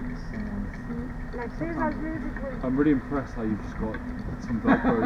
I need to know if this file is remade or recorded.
recorded